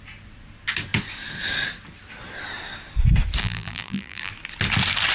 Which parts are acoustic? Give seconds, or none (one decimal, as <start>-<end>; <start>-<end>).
0.0-3.4; 4.3-5.1